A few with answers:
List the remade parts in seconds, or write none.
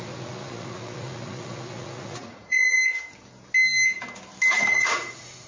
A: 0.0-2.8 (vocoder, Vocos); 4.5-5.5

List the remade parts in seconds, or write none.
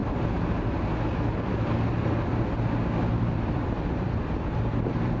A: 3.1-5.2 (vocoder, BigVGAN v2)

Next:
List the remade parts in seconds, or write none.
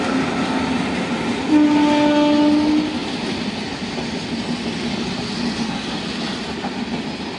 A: none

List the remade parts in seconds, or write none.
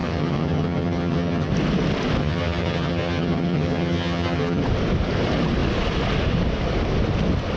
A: 0.0-1.5 (vocoder, HiFi-GAN); 2.2-4.6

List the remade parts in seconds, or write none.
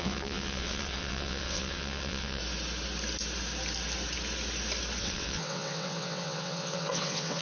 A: 0.0-2.4 (vocoder, WaveNeXt); 5.0-7.4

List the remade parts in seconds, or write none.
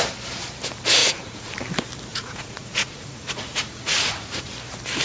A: 1.0-1.5 (vocoder, Vocos); 2.1-4.5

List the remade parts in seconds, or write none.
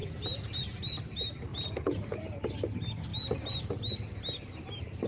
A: 1.5-2.2 (vocoder, Vocos)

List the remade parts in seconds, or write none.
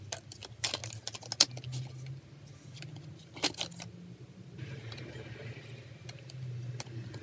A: none